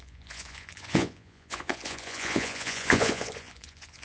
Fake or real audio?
fake